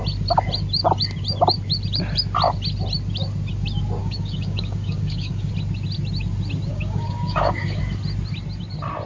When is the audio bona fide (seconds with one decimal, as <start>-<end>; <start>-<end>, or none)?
0.0-4.0; 5.5-6.7; 7.8-9.1